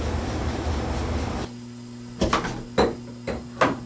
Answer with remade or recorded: recorded